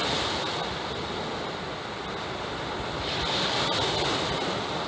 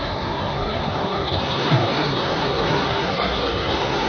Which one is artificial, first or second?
second